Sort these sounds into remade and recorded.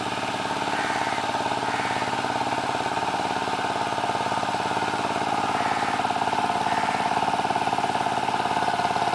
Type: recorded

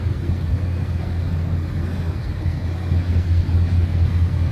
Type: remade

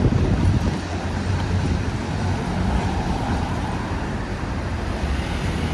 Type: remade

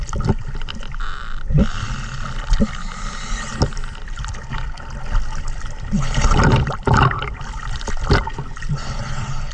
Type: recorded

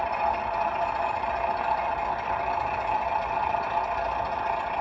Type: recorded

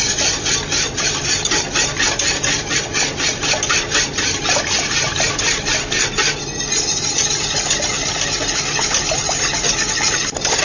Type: recorded